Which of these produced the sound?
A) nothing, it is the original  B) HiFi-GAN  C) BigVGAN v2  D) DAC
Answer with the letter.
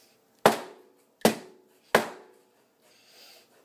A